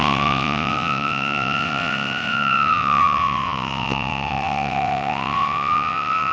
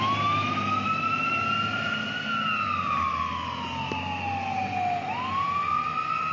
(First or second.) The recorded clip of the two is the second